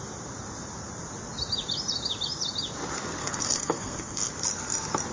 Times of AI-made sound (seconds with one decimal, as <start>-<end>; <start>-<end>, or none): 3.2-4.3